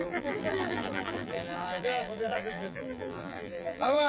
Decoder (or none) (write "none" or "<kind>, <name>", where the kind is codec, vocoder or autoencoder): vocoder, BigVGAN v2